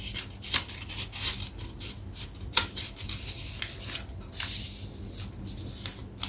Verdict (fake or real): real